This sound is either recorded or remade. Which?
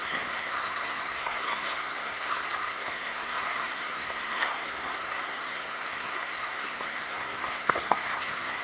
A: remade